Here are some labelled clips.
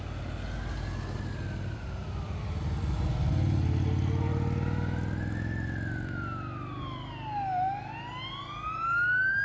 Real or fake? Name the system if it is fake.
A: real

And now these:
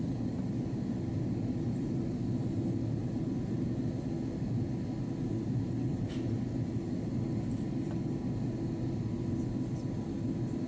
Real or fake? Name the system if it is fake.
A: real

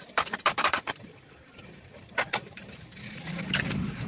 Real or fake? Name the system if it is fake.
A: fake, vocoder, BigVGAN v2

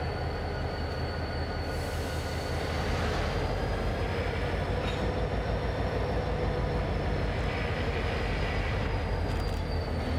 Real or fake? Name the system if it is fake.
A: real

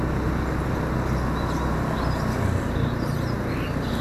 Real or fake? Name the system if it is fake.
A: real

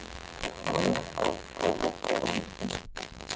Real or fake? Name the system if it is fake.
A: fake, vocoder, BigVGAN v2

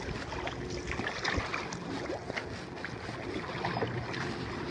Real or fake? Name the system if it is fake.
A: real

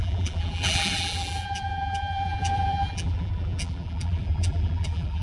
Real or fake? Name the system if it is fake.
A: fake, vocoder, BigVGAN v2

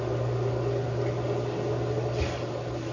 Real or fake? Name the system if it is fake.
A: real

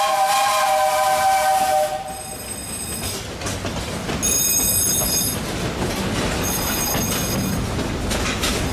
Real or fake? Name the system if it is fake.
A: real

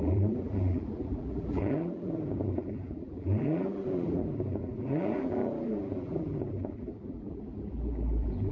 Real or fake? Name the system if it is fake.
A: fake, vocoder, BigVGAN v2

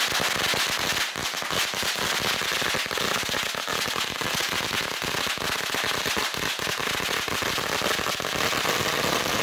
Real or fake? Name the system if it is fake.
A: real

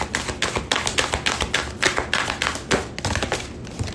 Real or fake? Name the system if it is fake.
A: real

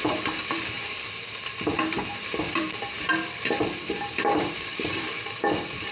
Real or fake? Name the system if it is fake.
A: fake, vocoder, BigVGAN v2